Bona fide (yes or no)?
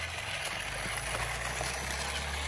yes